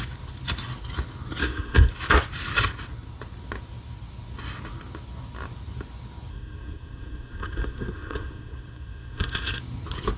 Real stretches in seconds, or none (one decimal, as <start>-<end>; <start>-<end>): 0.0-1.4; 1.9-6.3; 9.6-10.2